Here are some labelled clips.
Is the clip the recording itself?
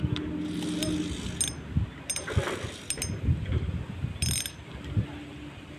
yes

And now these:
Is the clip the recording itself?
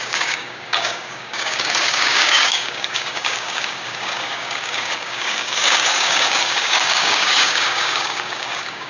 no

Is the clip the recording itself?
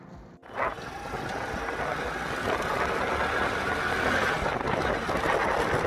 yes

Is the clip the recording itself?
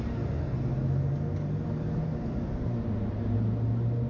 yes